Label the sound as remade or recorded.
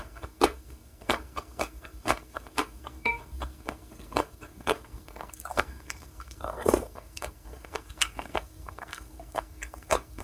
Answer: remade